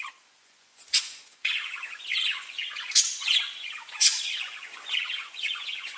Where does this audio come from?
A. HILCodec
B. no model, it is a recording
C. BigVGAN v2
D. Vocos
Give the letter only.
D